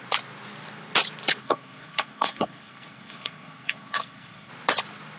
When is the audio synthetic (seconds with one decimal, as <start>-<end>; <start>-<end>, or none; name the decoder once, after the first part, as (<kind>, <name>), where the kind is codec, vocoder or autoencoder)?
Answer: 1.4-4.5 (codec, SNAC)